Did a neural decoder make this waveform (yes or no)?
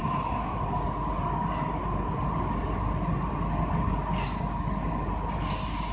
no